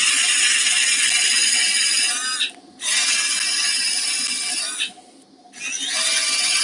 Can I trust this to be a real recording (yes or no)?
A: yes